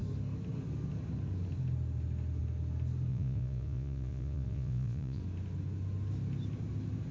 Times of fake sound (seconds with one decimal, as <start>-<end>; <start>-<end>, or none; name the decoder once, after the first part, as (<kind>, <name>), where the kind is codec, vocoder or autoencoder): 3.1-5.2 (vocoder, Vocos)